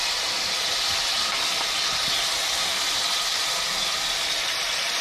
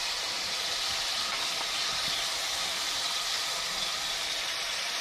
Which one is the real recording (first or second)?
first